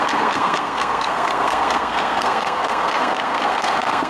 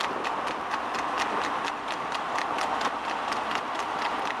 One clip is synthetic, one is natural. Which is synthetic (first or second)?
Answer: first